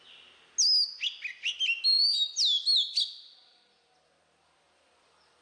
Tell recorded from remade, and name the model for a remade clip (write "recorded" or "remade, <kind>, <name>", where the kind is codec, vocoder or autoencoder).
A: recorded